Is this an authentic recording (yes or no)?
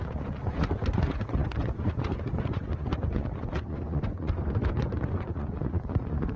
no